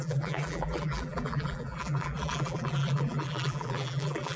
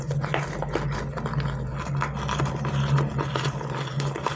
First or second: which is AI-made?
first